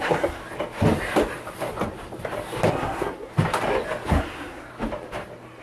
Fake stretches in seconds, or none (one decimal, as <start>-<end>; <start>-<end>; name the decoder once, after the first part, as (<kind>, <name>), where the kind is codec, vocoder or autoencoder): 0.0-0.4 (codec, SNAC); 2.7-3.3; 4.1-4.7